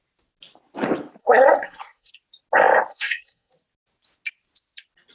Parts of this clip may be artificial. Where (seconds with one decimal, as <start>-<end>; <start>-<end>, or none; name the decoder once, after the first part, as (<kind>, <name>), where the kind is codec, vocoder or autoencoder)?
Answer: 1.2-2.1 (codec, SNAC); 2.9-3.5